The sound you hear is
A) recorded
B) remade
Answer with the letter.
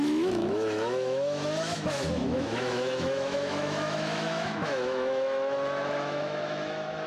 B